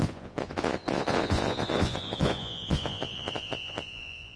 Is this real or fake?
fake